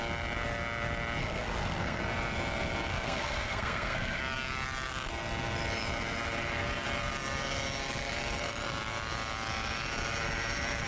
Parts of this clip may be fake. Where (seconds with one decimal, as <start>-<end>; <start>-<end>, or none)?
1.2-2.0; 2.9-4.2